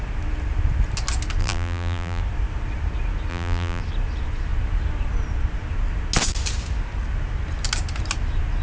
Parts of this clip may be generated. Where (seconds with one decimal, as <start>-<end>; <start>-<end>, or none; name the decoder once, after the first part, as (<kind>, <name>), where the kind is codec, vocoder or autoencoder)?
1.4-2.2 (vocoder, BigVGAN v2); 3.3-3.8